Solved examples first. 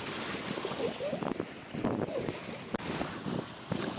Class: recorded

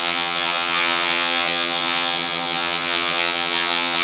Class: remade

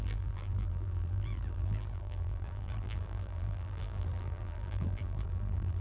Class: remade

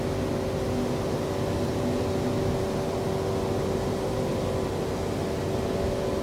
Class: recorded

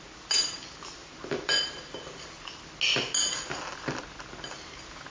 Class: recorded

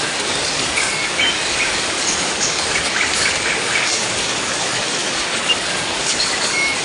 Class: remade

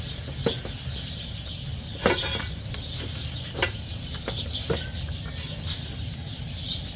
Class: recorded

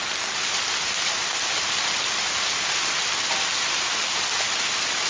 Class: recorded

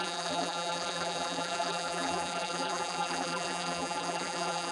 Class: remade